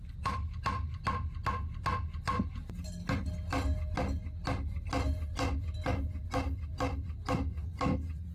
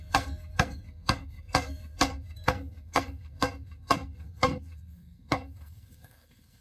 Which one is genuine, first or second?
first